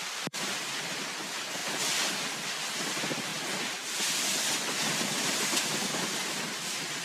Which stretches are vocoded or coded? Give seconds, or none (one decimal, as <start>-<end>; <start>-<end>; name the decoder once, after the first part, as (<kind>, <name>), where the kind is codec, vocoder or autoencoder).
none